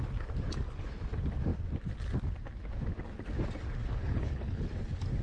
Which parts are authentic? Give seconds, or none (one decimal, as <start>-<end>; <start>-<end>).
0.0-4.0; 4.6-5.2